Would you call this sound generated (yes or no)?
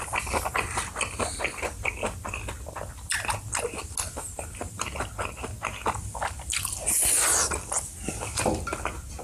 no